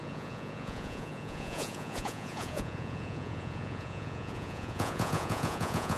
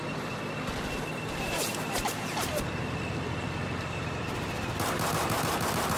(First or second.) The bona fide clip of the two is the second